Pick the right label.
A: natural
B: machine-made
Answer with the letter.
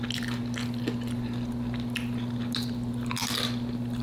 A